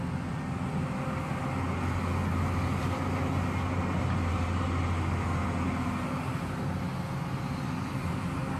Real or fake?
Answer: real